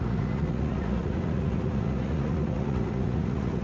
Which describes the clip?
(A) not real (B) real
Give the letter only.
A